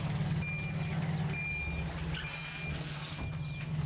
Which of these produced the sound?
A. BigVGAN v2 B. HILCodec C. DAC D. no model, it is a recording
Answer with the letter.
D